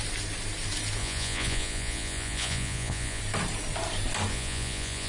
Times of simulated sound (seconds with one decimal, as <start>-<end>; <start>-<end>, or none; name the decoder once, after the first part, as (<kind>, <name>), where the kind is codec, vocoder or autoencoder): 1.0-3.2 (vocoder, Vocos); 4.3-5.1